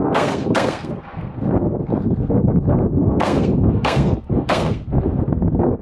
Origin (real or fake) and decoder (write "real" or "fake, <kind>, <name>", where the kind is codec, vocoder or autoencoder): fake, codec, SNAC